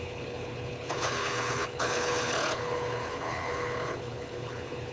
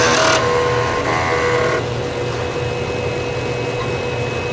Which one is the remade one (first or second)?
first